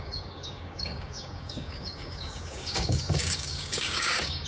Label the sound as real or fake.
fake